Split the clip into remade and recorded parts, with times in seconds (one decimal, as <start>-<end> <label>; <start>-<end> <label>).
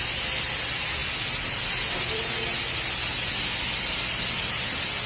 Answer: 0.0-5.1 recorded